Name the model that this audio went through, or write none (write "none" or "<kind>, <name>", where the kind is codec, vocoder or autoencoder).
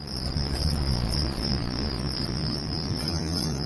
vocoder, Vocos